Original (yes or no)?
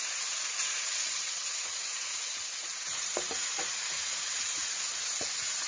no